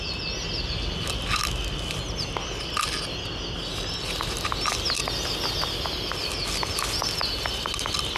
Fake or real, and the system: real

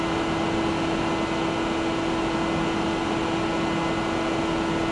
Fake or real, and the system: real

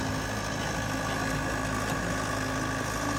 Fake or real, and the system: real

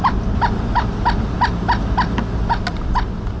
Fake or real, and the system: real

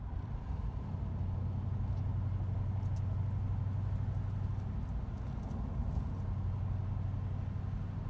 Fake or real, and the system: real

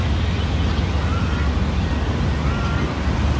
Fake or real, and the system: real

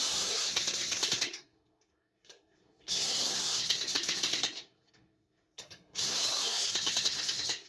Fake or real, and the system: fake, codec, SNAC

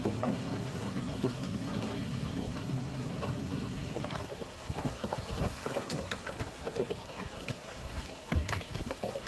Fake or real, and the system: fake, codec, SNAC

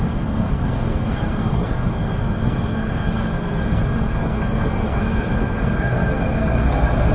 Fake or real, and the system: fake, codec, SNAC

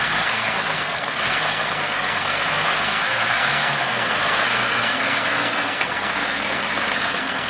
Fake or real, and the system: fake, codec, SNAC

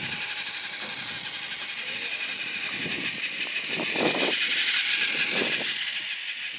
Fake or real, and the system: real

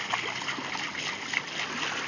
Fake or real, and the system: real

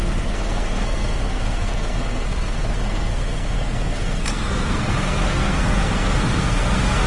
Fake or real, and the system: fake, codec, SNAC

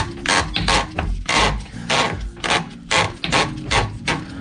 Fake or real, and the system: real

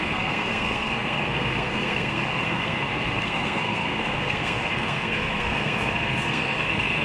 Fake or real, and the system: fake, codec, SNAC